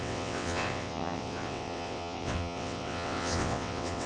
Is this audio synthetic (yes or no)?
yes